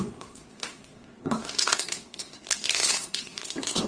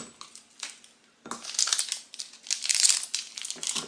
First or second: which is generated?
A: first